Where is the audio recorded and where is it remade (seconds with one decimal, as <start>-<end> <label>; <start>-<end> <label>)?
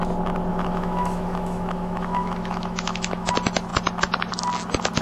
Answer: 0.0-0.5 recorded; 0.5-3.3 remade; 3.3-5.0 recorded